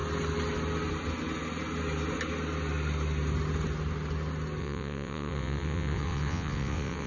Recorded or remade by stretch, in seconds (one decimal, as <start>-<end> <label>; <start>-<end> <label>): 0.0-4.6 recorded; 4.6-7.1 remade